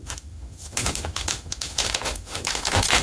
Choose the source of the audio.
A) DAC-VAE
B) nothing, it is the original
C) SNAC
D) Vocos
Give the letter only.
A